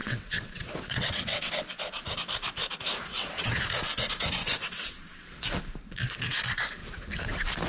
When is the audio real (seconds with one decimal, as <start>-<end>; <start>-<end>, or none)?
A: 1.5-3.1; 3.6-4.4; 5.4-7.7